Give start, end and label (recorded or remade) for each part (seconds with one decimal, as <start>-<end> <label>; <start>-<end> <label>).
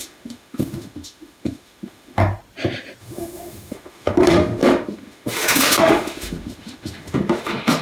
0.0-2.2 remade; 2.2-3.0 recorded; 3.0-7.8 remade